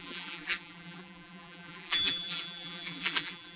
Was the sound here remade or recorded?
remade